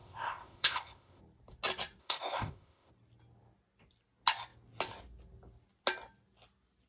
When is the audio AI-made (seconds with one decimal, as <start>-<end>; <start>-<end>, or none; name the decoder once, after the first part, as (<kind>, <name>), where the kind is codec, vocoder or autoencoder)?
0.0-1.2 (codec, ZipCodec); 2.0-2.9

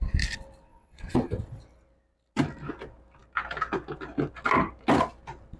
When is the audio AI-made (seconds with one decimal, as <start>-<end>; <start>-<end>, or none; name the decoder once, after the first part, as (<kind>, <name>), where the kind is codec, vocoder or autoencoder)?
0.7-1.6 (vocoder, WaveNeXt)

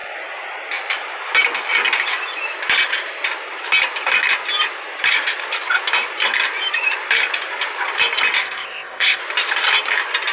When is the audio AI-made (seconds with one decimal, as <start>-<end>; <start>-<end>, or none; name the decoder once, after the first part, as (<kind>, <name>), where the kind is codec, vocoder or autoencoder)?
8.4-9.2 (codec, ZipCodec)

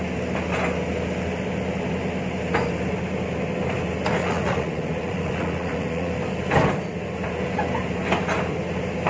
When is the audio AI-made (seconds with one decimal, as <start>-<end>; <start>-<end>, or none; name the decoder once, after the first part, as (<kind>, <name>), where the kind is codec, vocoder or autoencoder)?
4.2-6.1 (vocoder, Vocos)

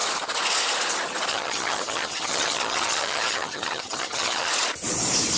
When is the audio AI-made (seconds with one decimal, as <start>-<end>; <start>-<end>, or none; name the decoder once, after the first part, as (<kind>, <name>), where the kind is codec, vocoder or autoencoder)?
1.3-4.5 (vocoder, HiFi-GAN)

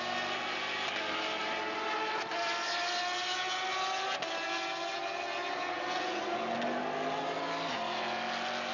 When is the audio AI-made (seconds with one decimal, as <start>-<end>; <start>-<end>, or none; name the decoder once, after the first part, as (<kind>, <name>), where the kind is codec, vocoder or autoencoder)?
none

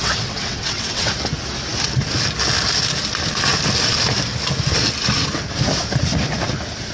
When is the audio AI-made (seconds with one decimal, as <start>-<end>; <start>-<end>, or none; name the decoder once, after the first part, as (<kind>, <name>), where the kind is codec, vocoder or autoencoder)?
0.0-1.1 (vocoder, WaveNeXt)